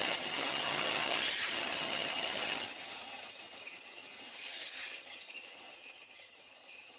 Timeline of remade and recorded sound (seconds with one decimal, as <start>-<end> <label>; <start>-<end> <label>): 0.0-7.0 remade